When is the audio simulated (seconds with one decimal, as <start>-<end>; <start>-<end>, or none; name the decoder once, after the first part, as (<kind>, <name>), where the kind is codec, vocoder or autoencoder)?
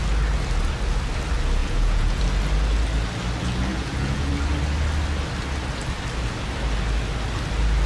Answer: 1.6-2.2 (vocoder, Vocos); 3.7-4.3